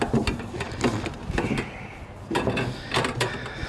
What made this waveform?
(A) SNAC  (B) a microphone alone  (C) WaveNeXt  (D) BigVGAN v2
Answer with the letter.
B